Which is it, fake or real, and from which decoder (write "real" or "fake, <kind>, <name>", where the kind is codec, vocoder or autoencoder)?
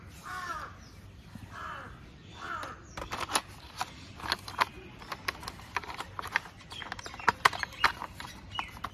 real